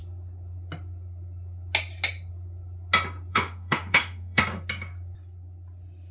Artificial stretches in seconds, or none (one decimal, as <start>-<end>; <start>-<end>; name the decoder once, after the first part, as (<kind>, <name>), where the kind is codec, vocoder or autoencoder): 3.3-4.4 (autoencoder, DAC-VAE)